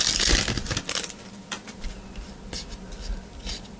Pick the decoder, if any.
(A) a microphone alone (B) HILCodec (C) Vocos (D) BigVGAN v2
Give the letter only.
A